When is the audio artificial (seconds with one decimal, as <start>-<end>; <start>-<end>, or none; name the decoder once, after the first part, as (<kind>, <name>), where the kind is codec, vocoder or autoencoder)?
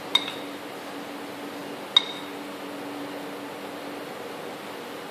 none